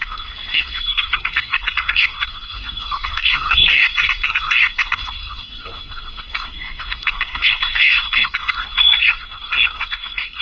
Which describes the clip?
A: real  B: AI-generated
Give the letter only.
B